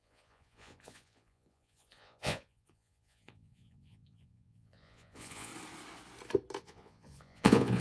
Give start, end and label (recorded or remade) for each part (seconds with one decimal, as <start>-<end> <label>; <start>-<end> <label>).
0.0-5.5 remade; 5.5-6.6 recorded; 6.6-7.8 remade